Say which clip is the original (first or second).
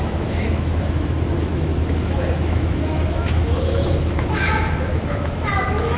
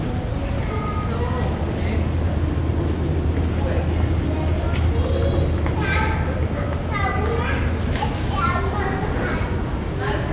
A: second